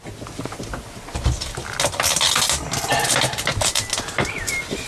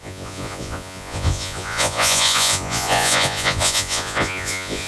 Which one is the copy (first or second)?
second